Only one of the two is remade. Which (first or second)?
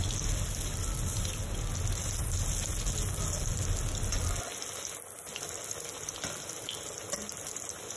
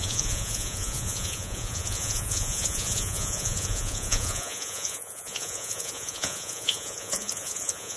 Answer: second